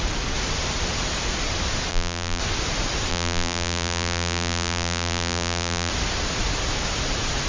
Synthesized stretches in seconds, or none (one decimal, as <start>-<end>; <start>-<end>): 1.9-2.4; 3.1-5.9